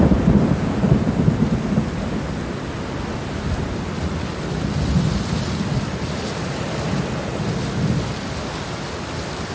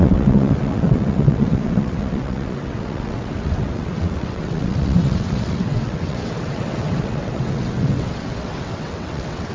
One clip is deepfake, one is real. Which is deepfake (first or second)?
second